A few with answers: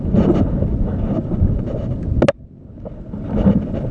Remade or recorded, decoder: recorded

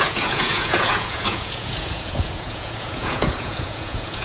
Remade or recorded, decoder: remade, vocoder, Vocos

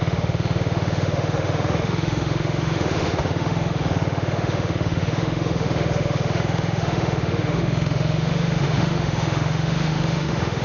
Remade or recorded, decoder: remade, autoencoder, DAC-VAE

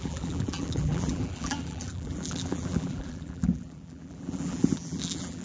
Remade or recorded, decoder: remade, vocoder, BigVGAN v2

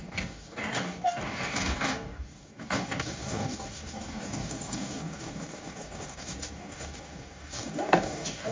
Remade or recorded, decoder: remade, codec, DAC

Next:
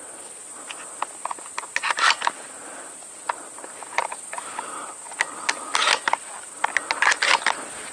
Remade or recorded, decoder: recorded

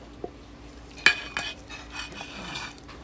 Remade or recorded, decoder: recorded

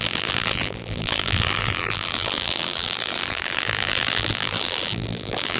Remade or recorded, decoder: remade, vocoder, BigVGAN v2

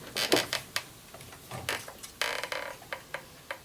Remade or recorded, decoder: recorded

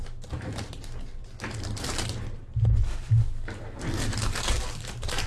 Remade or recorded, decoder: recorded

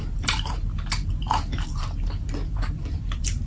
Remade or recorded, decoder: remade, vocoder, BigVGAN v2